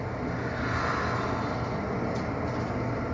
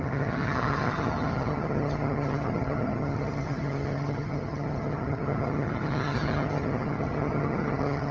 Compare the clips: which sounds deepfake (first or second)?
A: second